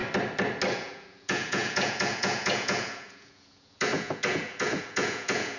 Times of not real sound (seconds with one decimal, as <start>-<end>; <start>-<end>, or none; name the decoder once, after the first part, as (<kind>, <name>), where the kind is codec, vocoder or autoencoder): 0.7-5.6 (vocoder, Vocos)